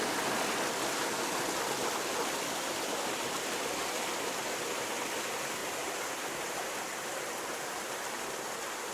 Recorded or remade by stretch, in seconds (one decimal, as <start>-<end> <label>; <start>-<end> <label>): 0.0-5.6 recorded; 5.6-6.9 remade; 6.9-8.9 recorded